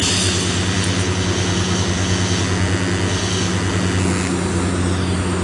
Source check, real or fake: real